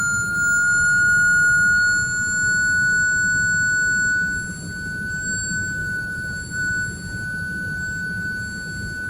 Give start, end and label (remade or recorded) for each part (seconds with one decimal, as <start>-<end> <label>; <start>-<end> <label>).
0.0-5.8 recorded; 5.8-6.7 remade; 6.7-9.1 recorded